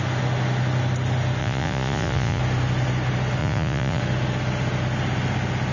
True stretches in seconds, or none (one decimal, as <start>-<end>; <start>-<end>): 0.0-1.4; 2.4-3.4; 4.0-5.7